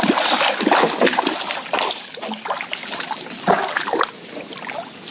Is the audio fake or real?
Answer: real